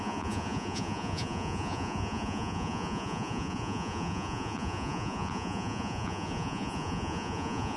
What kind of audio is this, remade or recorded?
remade